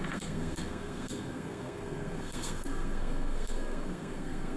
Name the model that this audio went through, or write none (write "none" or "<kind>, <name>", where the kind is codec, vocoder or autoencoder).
codec, SNAC